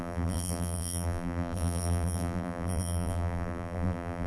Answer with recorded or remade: remade